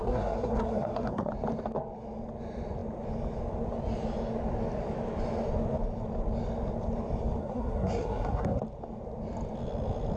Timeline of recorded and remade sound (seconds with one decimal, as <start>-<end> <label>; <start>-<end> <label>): 0.0-1.3 remade; 1.3-7.4 recorded; 7.4-8.6 remade; 8.6-10.2 recorded